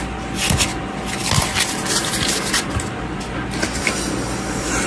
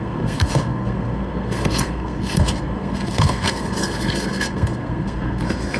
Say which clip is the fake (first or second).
second